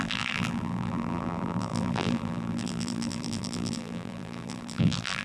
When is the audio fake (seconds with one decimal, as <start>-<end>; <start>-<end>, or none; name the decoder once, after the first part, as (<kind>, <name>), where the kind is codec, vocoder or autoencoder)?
0.0-5.2 (vocoder, BigVGAN v2)